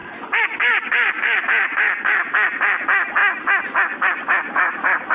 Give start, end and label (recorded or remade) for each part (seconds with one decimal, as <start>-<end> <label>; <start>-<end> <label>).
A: 0.0-5.1 recorded